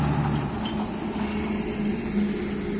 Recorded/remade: recorded